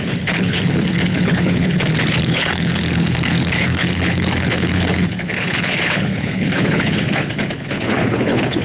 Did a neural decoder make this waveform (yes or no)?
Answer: yes